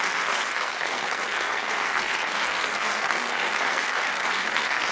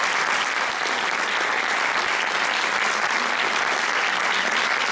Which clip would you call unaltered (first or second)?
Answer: second